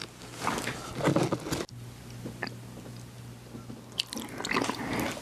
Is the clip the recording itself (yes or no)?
yes